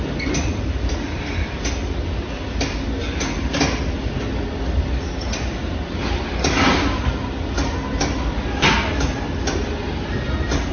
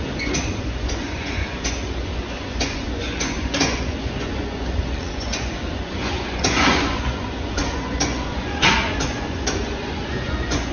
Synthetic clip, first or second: second